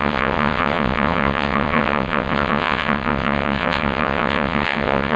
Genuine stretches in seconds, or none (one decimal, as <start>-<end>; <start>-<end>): none